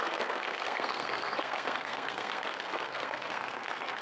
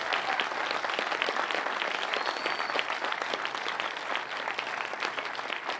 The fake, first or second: first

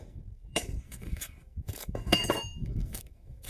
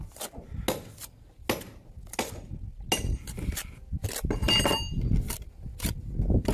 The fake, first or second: first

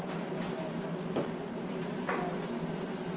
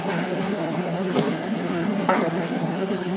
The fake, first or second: second